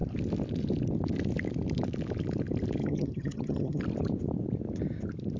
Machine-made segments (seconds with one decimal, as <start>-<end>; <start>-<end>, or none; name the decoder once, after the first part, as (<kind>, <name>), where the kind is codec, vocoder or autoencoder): 2.8-3.8 (vocoder, HiFi-GAN)